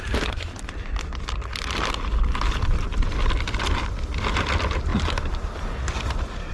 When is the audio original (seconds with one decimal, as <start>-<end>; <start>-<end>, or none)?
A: 0.0-6.5